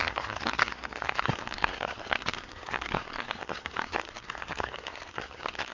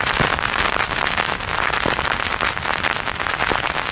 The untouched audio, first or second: second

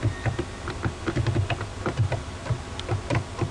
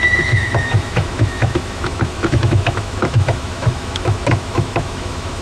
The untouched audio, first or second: first